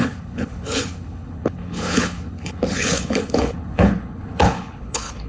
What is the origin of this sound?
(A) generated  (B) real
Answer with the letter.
A